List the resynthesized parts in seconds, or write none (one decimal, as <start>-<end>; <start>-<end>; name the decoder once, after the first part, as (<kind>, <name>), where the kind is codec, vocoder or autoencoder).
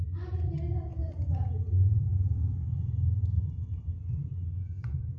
0.0-3.2 (vocoder, BigVGAN v2); 4.1-5.2